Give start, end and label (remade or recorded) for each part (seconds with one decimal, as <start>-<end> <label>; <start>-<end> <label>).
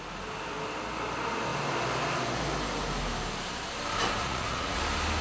0.0-4.2 recorded; 4.2-4.8 remade; 4.8-5.2 recorded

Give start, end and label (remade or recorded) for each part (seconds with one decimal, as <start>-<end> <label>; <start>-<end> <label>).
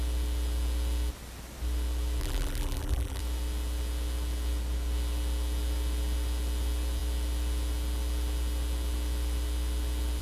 0.0-2.2 recorded; 2.2-3.2 remade; 3.2-10.2 recorded